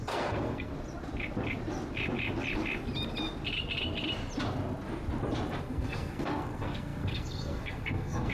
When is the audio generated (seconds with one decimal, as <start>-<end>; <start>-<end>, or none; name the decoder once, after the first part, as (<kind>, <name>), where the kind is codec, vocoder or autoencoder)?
0.0-0.7 (codec, SNAC); 5.6-8.3